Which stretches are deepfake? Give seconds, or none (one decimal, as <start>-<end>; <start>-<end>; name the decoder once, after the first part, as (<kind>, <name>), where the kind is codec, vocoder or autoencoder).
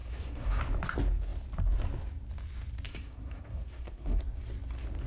0.0-0.6 (codec, SNAC); 2.9-4.2